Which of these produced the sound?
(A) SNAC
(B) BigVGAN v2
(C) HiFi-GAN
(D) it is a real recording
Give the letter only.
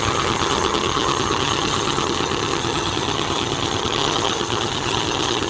C